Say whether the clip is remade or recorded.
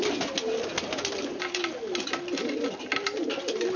recorded